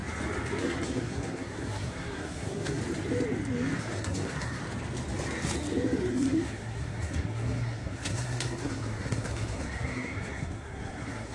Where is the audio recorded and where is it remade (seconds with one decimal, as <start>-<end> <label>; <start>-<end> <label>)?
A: 0.0-0.6 recorded; 0.6-2.8 remade; 2.8-3.8 recorded; 3.8-4.6 remade; 4.6-6.1 recorded; 6.1-11.3 remade